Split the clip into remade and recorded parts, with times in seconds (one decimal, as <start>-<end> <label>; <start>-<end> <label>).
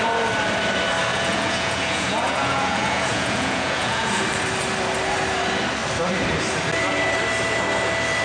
0.0-1.1 recorded; 1.1-4.2 remade; 4.2-8.2 recorded